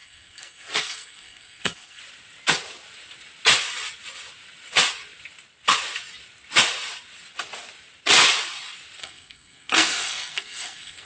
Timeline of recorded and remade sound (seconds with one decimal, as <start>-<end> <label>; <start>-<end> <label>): 0.0-2.0 remade; 2.0-9.0 recorded; 9.0-11.1 remade